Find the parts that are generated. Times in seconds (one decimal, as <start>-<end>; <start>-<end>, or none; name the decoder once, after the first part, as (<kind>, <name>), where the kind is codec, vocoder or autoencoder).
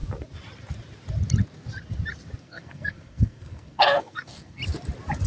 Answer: 2.4-4.6 (codec, SNAC)